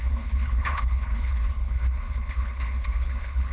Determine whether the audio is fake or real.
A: fake